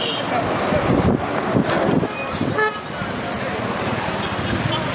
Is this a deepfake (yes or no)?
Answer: no